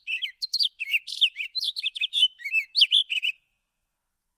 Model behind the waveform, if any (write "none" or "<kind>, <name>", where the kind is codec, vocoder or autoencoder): autoencoder, DAC-VAE